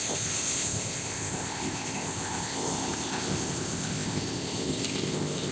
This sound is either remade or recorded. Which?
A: remade